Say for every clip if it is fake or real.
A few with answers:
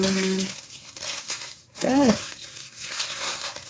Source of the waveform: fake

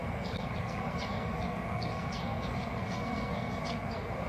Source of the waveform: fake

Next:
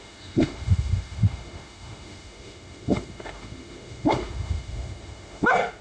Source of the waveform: fake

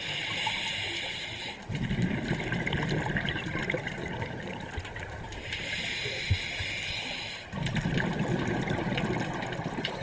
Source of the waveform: real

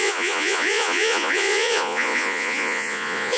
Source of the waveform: fake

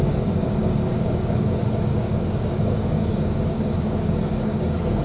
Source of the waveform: fake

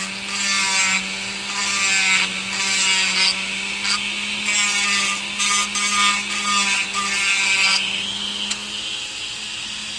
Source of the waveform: real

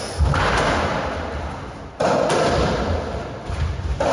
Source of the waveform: real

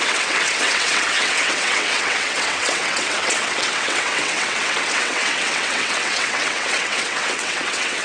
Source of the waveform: fake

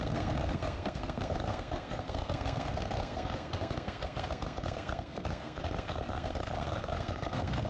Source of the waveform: fake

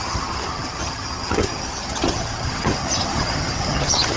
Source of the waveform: fake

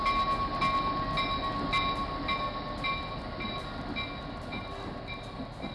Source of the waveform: real